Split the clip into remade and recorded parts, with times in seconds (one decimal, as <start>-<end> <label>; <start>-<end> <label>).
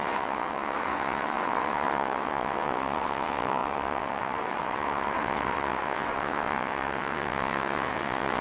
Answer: 0.0-8.4 remade